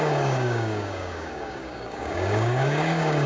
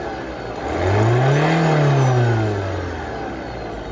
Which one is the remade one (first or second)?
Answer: first